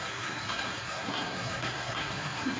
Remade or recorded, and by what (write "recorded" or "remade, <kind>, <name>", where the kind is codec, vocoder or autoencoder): remade, codec, SNAC